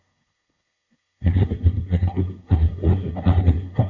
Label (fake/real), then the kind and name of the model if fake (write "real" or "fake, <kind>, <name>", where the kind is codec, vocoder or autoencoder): fake, codec, SNAC